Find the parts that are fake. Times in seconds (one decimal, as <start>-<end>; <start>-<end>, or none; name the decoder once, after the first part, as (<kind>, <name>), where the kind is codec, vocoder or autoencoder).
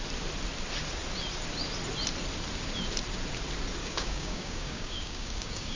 3.8-5.8 (codec, DAC)